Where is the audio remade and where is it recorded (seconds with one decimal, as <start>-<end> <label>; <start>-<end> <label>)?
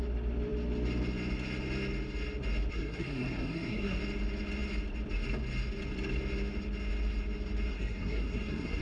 0.0-2.7 recorded; 2.7-4.0 remade; 4.0-7.7 recorded; 7.7-8.8 remade